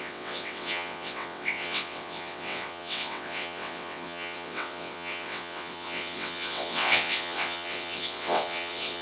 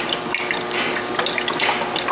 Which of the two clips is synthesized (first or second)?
first